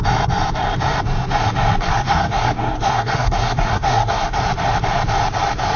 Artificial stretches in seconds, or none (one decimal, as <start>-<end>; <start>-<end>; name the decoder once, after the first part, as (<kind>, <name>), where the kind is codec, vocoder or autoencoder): 1.8-4.4 (codec, SNAC)